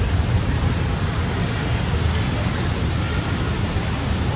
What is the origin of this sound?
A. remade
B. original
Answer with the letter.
B